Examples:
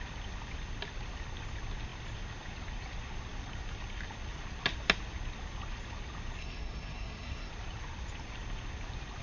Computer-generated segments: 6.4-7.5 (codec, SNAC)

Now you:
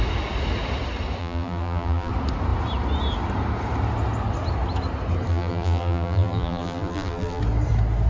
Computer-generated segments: 1.2-2.1 (vocoder, BigVGAN v2); 5.3-7.4